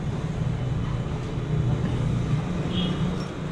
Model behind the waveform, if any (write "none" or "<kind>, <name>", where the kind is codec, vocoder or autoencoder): none